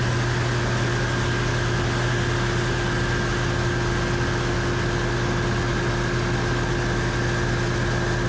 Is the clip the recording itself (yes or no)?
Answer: yes